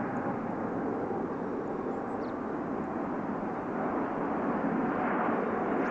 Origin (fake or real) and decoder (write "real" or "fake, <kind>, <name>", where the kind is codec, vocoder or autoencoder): real